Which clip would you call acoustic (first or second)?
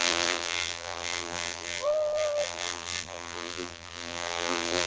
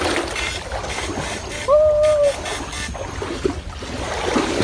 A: second